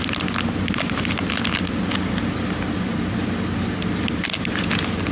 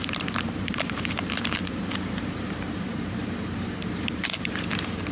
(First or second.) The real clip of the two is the first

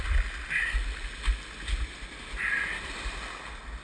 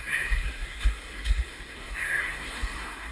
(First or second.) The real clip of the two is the first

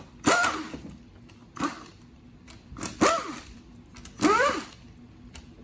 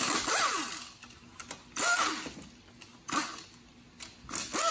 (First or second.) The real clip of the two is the second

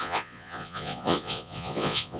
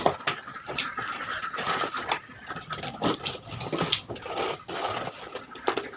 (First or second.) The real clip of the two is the second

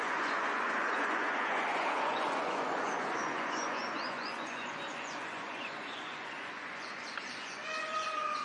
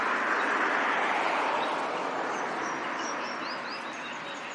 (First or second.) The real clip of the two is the second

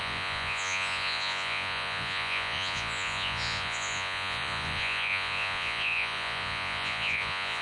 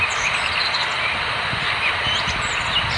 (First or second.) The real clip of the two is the second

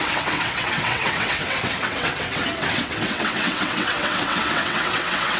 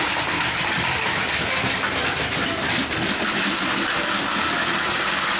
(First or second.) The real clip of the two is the second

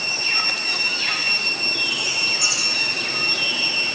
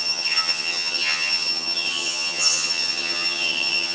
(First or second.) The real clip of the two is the first